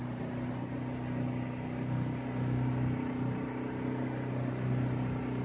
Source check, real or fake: real